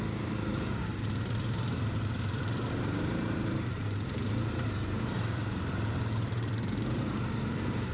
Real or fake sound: fake